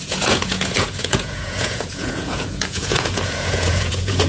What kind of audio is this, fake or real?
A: fake